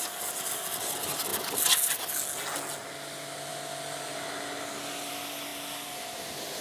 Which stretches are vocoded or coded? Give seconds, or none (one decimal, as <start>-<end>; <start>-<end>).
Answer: none